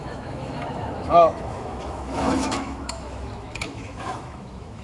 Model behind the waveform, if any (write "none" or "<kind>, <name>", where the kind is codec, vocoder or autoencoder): autoencoder, DAC-VAE